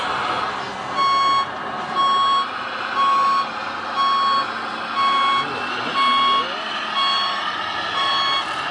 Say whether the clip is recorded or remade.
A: recorded